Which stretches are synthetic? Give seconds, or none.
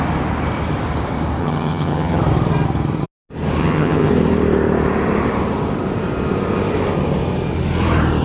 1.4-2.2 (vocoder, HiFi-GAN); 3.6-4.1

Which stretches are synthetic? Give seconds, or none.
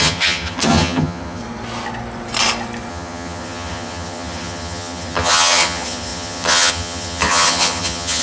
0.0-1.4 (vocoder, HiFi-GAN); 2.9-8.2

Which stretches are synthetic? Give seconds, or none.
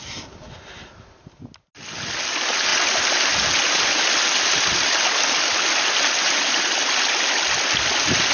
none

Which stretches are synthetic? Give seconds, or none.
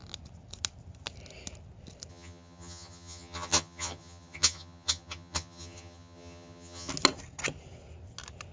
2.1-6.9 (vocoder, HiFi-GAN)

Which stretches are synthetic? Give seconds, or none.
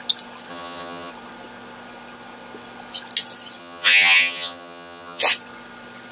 0.5-1.1 (vocoder, HiFi-GAN); 3.6-5.2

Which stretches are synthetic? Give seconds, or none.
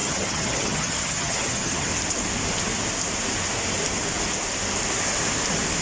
0.0-1.9 (vocoder, HiFi-GAN)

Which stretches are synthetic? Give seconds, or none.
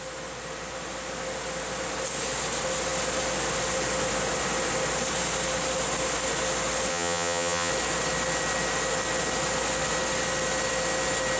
6.9-7.7 (vocoder, HiFi-GAN)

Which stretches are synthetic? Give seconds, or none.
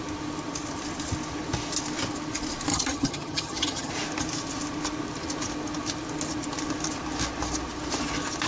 2.7-3.9 (vocoder, HiFi-GAN)